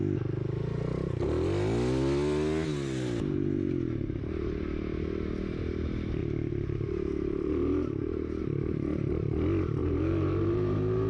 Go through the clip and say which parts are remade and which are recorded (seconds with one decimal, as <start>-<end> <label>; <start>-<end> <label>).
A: 0.0-6.2 recorded; 6.2-8.4 remade; 8.4-9.8 recorded; 9.8-11.1 remade